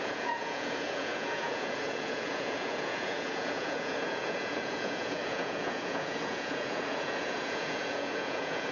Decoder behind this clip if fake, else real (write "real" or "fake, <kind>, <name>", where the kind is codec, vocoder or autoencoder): fake, vocoder, Vocos